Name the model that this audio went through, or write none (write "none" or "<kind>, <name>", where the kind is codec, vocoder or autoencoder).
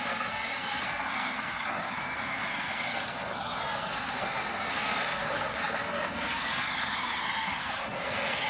codec, SNAC